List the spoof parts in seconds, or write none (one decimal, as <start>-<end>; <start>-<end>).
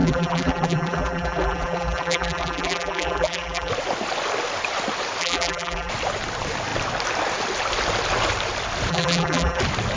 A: 0.0-3.7; 5.2-5.9; 8.9-9.6